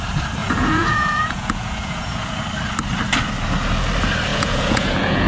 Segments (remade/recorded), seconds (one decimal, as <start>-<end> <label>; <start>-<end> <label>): 0.0-0.4 recorded; 0.4-2.4 remade; 2.4-4.3 recorded; 4.3-5.3 remade